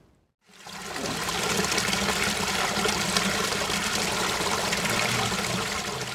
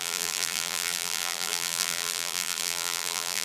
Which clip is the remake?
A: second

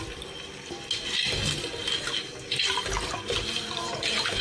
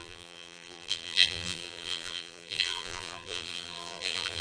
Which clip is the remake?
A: second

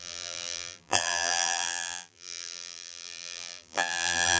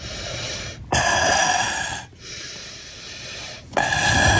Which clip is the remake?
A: first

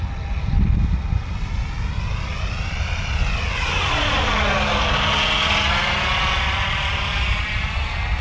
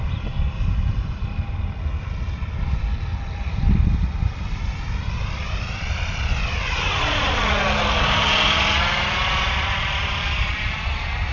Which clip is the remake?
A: second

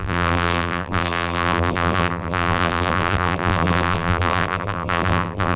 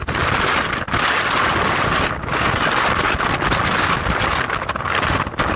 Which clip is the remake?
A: first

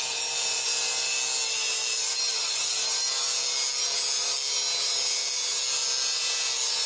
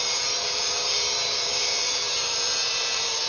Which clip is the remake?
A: second